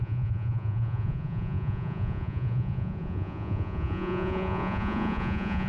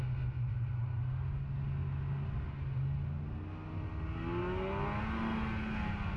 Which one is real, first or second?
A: second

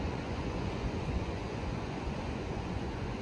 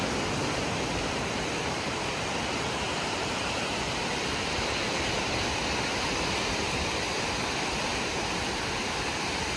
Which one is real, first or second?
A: second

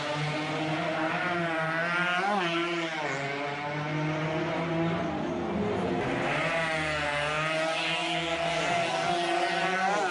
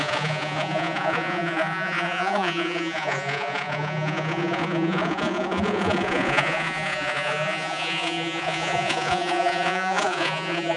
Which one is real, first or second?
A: first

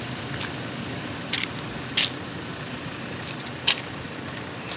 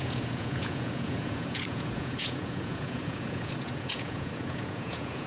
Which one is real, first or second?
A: first